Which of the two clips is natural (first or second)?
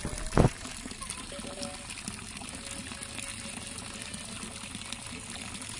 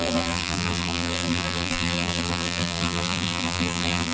first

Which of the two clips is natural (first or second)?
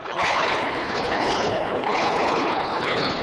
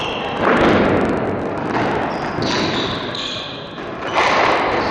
second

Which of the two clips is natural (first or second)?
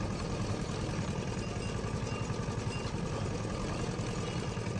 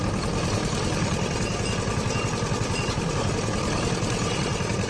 first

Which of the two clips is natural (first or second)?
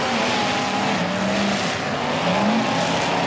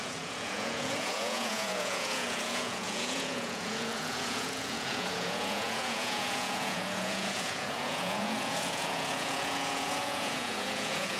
first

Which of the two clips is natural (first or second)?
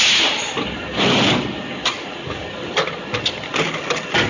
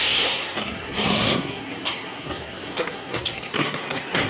first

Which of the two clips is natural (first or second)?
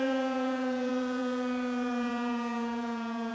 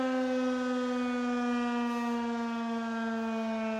second